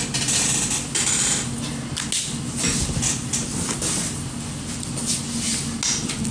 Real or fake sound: real